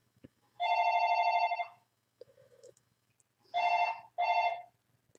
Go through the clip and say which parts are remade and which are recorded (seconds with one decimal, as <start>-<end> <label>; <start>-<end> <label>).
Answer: 0.0-3.1 remade; 3.1-5.2 recorded

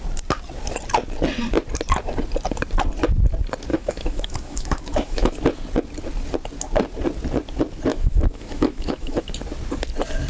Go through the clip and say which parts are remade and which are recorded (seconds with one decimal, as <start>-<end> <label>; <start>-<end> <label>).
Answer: 0.0-3.7 recorded; 3.7-5.4 remade; 5.4-7.9 recorded; 7.9-9.3 remade; 9.3-10.3 recorded

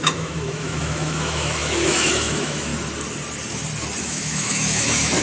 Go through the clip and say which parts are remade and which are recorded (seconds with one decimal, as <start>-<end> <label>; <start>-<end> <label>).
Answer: 0.0-2.7 remade; 2.7-4.0 recorded; 4.0-5.2 remade